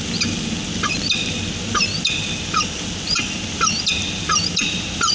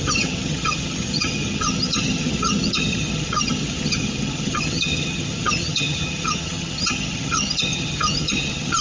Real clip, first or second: first